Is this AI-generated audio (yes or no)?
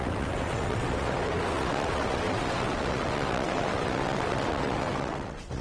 yes